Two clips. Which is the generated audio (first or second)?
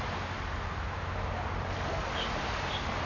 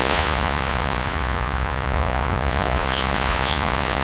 second